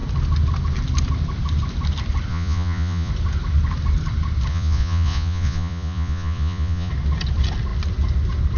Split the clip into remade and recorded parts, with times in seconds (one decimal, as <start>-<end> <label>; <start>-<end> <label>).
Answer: 0.0-2.3 recorded; 2.3-3.1 remade; 3.1-4.5 recorded; 4.5-6.9 remade; 6.9-8.6 recorded

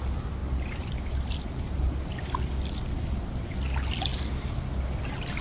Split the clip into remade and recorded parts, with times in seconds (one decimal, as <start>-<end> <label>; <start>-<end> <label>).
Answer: 0.0-5.4 recorded